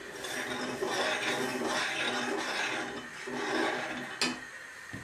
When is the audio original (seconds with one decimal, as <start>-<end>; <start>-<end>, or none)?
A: 0.0-5.0

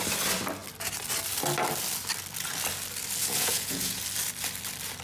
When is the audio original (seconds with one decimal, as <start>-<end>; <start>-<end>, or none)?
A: 0.0-3.2; 4.0-5.0

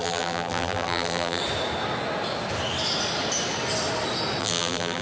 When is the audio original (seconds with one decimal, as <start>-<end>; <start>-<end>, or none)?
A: 1.4-4.4

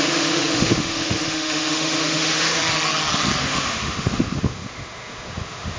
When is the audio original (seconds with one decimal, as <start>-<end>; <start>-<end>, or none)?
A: 2.6-3.4

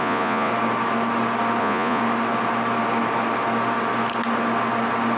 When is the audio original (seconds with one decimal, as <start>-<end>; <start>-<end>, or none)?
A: 0.5-1.6; 2.0-5.2

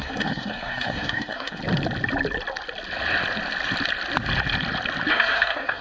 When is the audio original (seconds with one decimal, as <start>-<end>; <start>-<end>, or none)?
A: 1.6-5.1

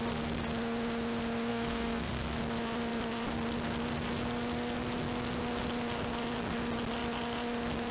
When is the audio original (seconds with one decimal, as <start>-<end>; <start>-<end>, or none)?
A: 0.0-1.5; 2.4-7.9

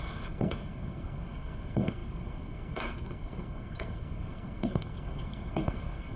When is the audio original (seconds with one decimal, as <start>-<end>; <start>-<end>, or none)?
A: none